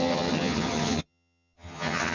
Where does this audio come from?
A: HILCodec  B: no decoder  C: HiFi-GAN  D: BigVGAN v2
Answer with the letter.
C